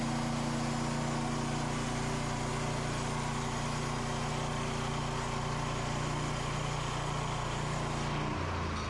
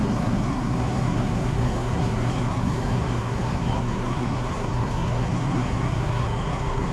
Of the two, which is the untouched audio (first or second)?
first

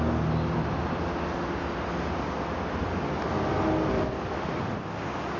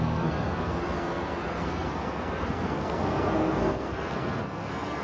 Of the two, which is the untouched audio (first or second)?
first